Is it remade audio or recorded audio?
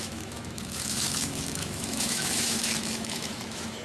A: remade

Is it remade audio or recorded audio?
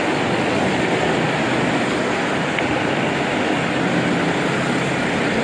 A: recorded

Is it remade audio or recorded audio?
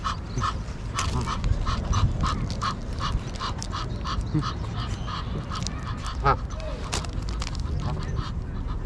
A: recorded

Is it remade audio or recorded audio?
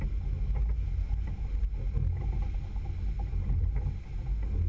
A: recorded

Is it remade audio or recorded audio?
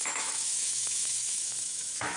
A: remade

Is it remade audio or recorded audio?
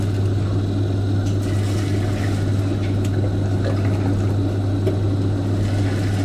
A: recorded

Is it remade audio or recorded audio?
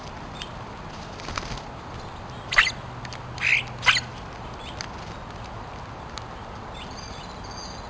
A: recorded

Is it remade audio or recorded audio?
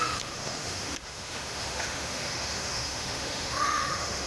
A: remade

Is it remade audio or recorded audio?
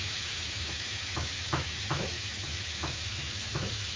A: remade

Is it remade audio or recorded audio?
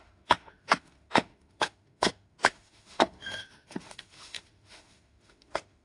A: remade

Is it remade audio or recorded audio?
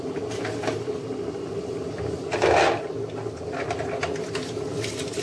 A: recorded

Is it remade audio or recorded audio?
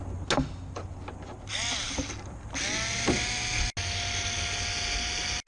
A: recorded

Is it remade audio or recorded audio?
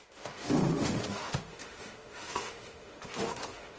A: remade